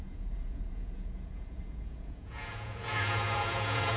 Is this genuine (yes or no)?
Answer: no